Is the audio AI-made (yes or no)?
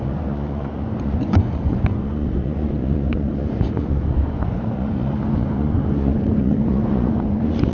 yes